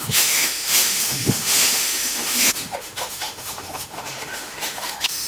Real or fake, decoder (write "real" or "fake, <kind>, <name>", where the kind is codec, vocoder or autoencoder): fake, autoencoder, DAC-VAE